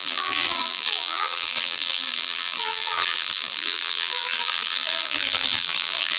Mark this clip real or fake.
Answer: fake